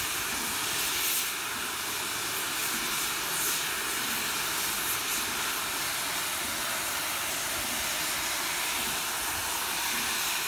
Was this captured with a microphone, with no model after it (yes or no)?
yes